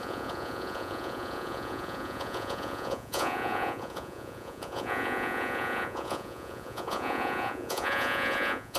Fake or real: fake